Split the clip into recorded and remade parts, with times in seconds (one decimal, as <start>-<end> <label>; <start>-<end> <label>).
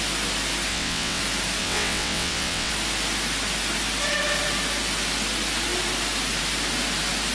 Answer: 0.0-0.7 recorded; 0.7-1.2 remade; 1.2-1.6 recorded; 1.6-2.7 remade; 2.7-7.3 recorded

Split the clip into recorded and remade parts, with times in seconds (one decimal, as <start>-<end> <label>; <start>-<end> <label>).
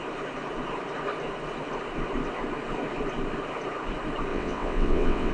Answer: 0.0-4.3 recorded; 4.3-5.3 remade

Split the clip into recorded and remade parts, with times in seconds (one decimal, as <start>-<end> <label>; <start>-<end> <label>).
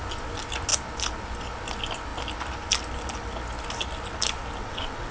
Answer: 0.0-4.6 recorded; 4.6-5.1 remade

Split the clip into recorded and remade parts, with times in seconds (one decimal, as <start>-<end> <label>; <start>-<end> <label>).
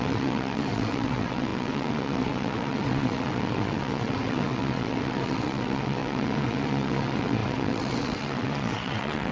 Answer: 0.0-9.3 remade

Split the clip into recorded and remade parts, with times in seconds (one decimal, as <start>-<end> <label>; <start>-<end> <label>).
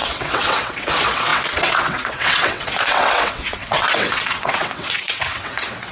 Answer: 0.0-5.9 remade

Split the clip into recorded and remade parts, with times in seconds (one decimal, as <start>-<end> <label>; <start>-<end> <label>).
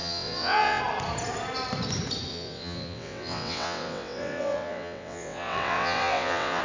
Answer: 0.0-0.8 remade; 0.8-2.3 recorded; 2.3-6.6 remade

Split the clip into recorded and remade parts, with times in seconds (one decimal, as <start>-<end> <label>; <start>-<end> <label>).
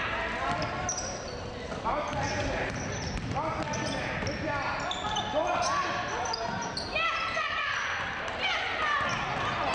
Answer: 0.0-9.7 recorded